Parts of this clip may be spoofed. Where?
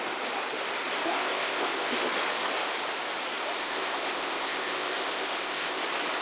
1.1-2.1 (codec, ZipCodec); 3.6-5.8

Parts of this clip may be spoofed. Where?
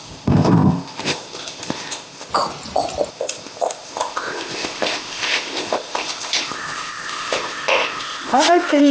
0.0-2.3 (codec, ZipCodec); 3.1-8.9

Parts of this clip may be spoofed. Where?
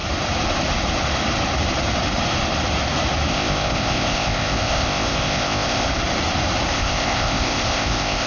3.3-5.9 (codec, ZipCodec); 6.7-8.3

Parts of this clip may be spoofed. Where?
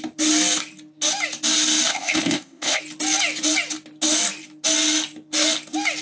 1.9-2.8 (codec, ZipCodec)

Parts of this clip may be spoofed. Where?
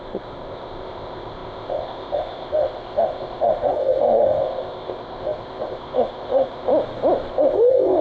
0.0-6.7 (codec, ZipCodec); 7.3-8.0